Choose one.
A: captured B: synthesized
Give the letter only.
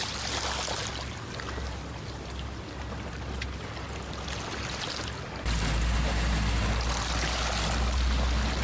A